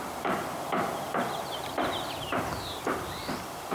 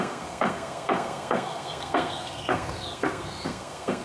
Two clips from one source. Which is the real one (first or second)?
first